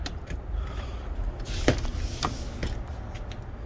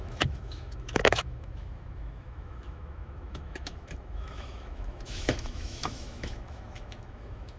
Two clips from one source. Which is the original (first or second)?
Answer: first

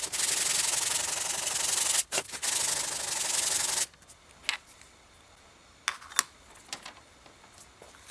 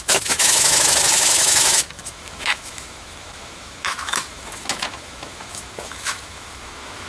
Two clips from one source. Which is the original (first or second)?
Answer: first